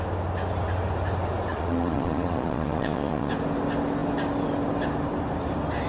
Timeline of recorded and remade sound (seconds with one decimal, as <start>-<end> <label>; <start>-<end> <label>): 0.0-1.5 recorded; 1.5-3.3 remade; 3.3-5.9 recorded